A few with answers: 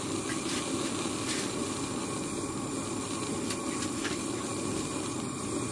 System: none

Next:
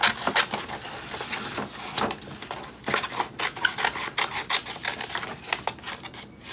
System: none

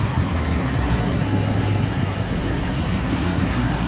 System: codec, SNAC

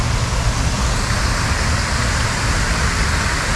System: none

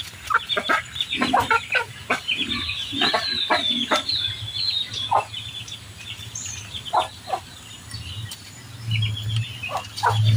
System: none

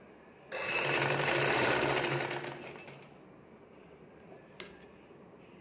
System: none